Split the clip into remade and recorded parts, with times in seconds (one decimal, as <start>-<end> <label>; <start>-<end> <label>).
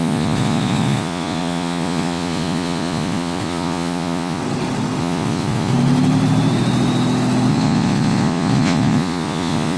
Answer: 0.0-4.4 remade; 4.4-5.0 recorded; 5.0-5.7 remade; 5.7-7.5 recorded; 7.5-9.8 remade